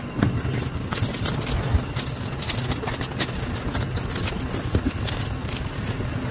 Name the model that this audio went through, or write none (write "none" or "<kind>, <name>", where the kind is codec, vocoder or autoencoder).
none